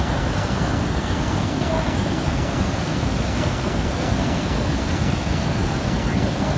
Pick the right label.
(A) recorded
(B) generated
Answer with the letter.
B